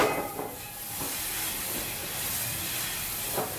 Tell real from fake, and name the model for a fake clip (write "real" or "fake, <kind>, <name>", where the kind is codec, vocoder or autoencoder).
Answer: real